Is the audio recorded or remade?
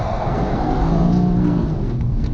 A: remade